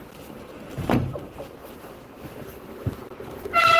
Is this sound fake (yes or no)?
yes